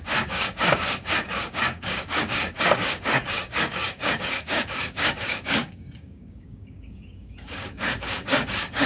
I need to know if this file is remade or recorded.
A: remade